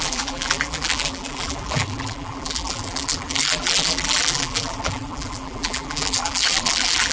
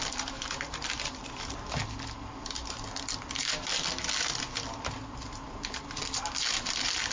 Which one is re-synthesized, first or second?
first